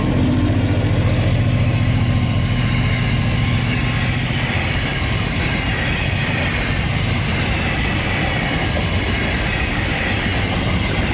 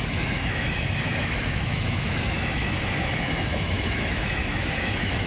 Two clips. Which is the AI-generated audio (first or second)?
second